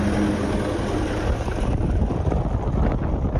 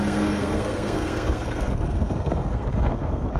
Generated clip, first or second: second